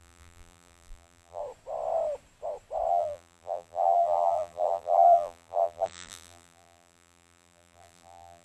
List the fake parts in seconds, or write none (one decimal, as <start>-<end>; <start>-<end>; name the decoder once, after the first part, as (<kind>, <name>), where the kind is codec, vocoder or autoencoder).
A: 0.0-1.4 (vocoder, BigVGAN v2); 2.9-8.4